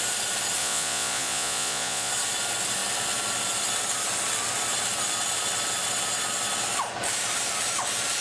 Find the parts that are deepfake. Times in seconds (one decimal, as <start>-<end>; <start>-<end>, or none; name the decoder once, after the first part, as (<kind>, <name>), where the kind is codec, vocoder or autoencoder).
0.6-2.1 (vocoder, Vocos)